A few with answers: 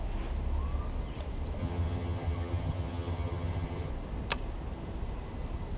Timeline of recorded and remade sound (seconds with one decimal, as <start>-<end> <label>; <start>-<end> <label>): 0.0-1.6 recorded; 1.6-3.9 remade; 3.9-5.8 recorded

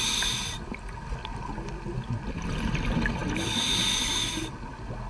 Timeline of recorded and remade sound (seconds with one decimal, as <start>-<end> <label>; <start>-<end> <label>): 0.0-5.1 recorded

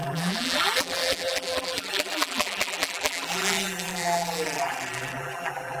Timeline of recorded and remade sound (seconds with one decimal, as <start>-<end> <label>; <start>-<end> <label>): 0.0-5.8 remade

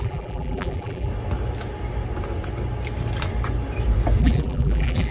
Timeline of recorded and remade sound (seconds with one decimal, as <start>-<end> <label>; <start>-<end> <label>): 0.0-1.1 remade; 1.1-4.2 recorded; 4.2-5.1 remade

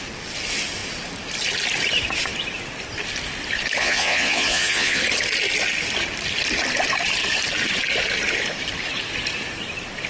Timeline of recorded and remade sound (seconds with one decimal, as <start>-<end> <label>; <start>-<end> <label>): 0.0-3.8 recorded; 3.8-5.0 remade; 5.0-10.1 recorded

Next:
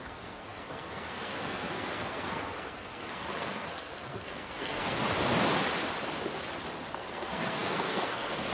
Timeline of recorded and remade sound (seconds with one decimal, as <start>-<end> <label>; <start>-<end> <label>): 0.0-5.0 remade; 5.0-6.9 recorded; 6.9-8.5 remade

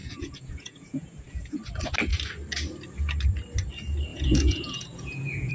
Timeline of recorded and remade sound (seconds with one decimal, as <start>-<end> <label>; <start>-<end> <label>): 0.0-1.6 remade; 1.6-4.1 recorded; 4.1-5.5 remade

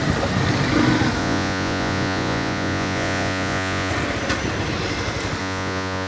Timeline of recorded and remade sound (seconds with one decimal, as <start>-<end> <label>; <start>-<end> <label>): 0.0-1.2 recorded; 1.2-3.9 remade; 3.9-5.4 recorded; 5.4-6.1 remade